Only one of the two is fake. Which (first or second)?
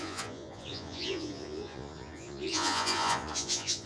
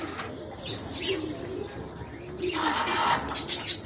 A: first